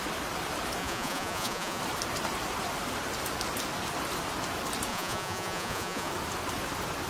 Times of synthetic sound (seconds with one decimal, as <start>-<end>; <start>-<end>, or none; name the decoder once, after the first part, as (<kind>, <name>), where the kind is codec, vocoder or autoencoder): 0.8-1.8 (vocoder, Vocos); 4.9-6.1